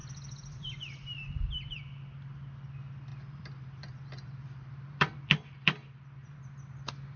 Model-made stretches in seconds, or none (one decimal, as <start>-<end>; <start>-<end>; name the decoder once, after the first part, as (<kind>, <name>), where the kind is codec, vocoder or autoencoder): 0.0-1.8 (vocoder, BigVGAN v2); 3.1-6.5